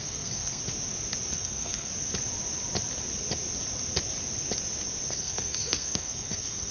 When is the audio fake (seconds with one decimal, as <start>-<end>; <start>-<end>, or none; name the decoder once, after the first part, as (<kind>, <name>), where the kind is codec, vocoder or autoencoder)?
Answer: 0.0-0.6 (codec, SNAC); 1.3-1.9; 5.1-6.7